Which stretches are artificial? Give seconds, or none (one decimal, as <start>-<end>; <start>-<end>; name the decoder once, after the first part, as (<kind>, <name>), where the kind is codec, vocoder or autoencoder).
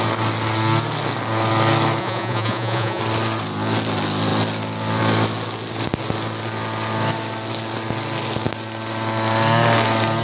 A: 2.0-3.0 (vocoder, Vocos)